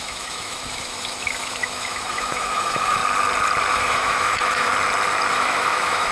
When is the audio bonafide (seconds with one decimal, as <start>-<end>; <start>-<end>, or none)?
3.0-3.7; 4.7-5.3